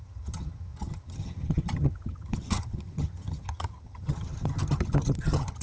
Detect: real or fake fake